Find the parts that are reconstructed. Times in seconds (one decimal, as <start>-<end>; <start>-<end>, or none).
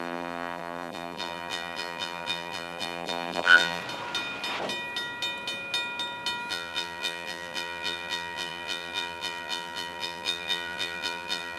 0.0-3.8; 6.5-11.6